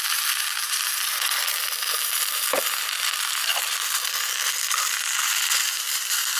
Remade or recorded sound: remade